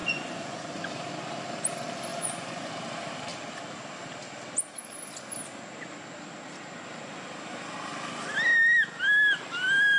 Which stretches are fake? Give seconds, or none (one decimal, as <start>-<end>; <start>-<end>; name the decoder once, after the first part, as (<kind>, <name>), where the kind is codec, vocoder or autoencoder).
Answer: 0.0-0.7 (vocoder, Vocos); 2.1-2.7